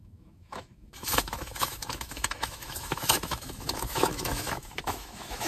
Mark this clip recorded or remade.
remade